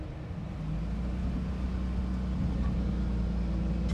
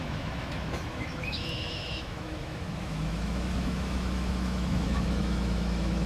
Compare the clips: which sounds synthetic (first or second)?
second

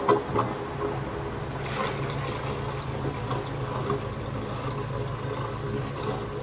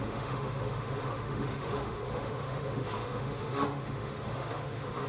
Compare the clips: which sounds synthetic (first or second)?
second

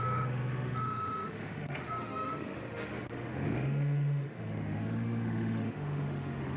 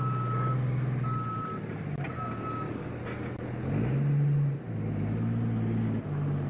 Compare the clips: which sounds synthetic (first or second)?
first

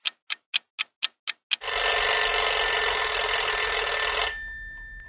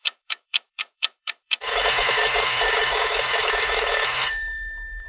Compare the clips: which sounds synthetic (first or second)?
second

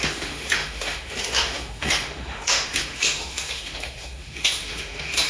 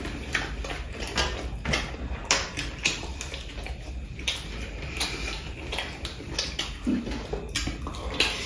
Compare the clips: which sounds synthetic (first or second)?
first